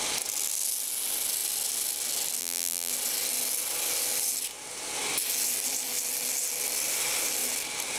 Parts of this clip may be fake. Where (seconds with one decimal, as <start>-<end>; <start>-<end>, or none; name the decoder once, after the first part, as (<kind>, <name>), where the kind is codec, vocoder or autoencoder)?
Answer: 2.4-2.9 (vocoder, BigVGAN v2)